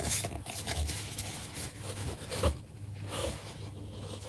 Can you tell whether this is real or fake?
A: fake